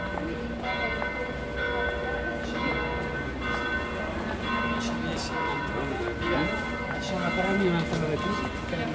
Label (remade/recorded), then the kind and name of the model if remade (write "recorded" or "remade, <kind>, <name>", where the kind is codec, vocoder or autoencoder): recorded